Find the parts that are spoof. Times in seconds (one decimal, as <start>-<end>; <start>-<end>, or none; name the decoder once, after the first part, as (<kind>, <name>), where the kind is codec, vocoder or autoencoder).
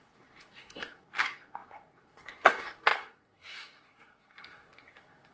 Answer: 0.0-5.3 (codec, SNAC)